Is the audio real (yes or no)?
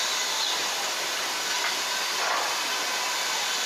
yes